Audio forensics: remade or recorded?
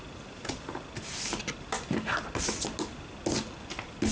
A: recorded